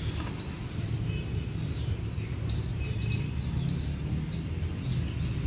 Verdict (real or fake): real